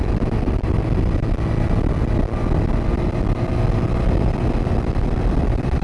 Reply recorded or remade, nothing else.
recorded